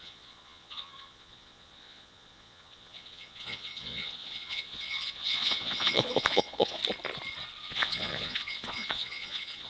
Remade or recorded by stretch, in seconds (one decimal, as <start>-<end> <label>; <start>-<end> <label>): 0.0-6.8 remade; 6.8-7.6 recorded; 7.6-9.7 remade